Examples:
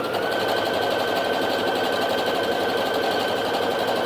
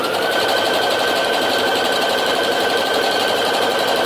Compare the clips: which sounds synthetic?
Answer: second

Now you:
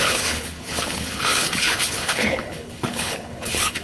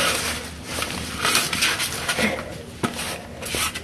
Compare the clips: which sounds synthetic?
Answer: first